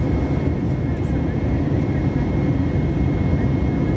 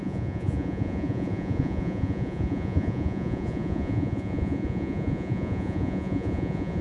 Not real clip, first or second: second